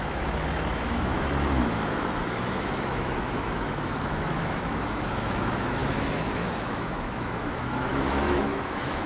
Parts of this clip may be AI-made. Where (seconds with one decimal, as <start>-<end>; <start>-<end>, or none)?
0.0-9.1